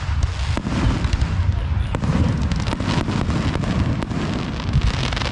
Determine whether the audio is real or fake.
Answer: real